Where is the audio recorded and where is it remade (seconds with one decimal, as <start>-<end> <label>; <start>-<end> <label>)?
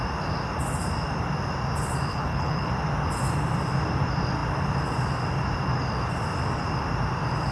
0.0-2.1 recorded; 2.1-2.7 remade; 2.7-7.5 recorded